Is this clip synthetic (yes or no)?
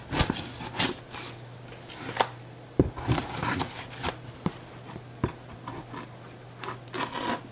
yes